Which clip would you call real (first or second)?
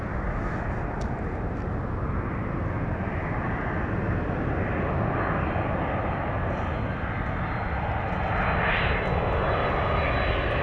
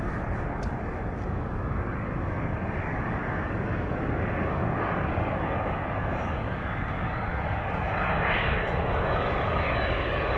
first